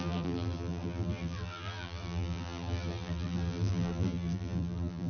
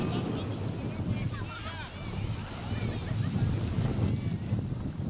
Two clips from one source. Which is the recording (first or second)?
second